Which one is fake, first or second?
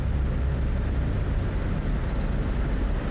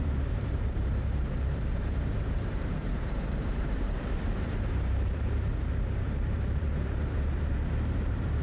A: second